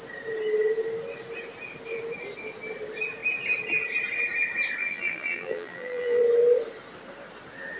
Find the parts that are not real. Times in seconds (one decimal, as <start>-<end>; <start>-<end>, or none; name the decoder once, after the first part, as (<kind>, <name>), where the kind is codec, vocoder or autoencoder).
4.8-6.2 (vocoder, BigVGAN v2)